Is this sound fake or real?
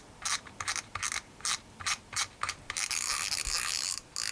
real